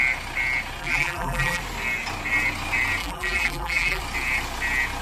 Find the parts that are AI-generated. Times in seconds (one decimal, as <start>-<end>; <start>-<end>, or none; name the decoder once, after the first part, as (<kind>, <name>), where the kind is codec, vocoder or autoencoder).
0.8-1.6 (vocoder, BigVGAN v2); 3.0-4.0